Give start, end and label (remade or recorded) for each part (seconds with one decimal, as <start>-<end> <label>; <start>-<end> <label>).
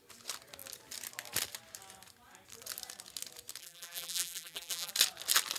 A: 0.0-3.6 recorded; 3.6-4.9 remade; 4.9-5.6 recorded